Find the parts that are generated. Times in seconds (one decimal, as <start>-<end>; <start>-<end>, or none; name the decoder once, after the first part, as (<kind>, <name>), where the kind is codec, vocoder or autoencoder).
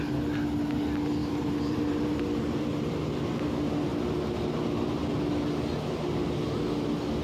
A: 1.2-2.7 (vocoder, BigVGAN v2)